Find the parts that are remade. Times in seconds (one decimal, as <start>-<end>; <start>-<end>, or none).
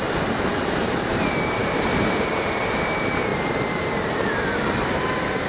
0.0-5.5